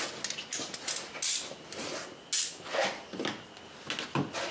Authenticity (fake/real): real